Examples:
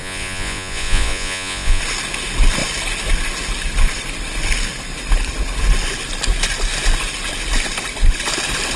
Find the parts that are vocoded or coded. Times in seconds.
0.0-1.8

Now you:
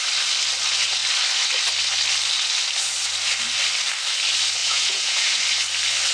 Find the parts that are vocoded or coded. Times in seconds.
4.6-5.4

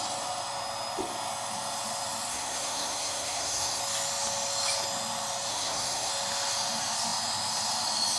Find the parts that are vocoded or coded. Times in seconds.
2.3-3.8; 5.5-6.1

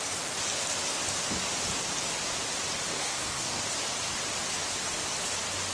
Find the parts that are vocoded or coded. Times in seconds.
2.9-3.6

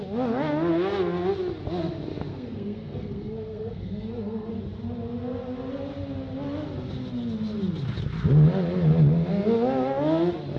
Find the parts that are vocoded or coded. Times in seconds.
2.3-4.5

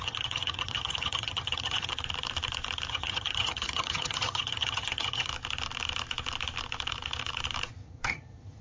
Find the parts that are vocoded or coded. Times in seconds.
0.0-1.9; 2.9-5.3; 7.7-8.6

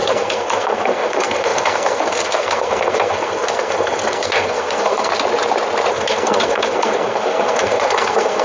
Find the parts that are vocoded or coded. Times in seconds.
0.0-5.1; 5.9-8.4